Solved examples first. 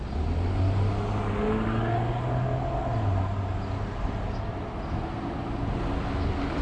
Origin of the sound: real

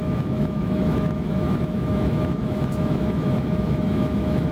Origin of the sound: fake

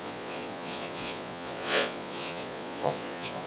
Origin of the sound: fake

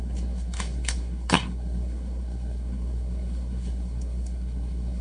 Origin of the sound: fake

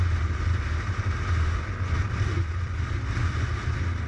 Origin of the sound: real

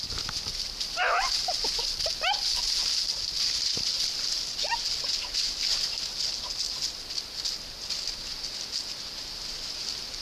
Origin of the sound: real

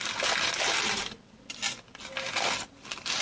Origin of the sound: real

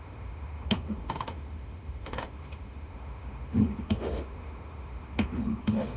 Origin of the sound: fake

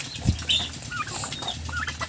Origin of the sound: real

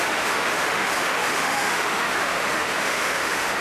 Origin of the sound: fake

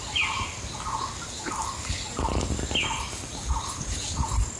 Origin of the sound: real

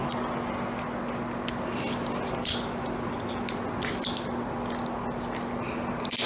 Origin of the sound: real